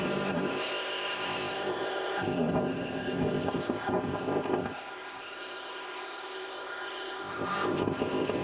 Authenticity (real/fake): fake